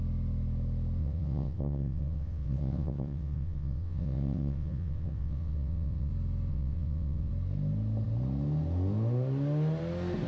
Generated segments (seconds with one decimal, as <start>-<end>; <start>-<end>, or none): 1.0-6.1; 6.5-7.3